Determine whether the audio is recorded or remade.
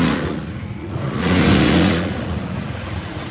remade